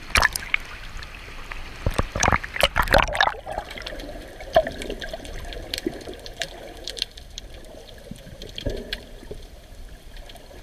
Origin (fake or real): fake